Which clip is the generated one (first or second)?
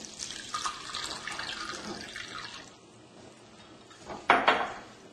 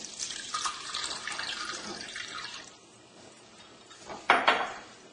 second